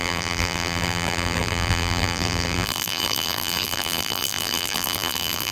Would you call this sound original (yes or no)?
no